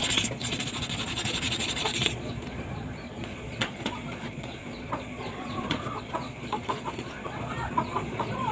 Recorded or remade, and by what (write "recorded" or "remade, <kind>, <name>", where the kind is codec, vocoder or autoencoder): remade, vocoder, Vocos